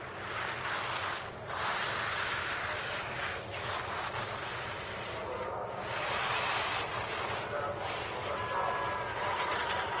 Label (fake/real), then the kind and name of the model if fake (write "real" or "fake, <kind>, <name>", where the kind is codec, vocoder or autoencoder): real